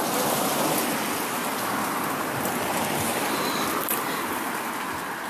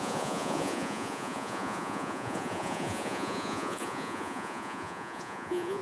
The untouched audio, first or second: first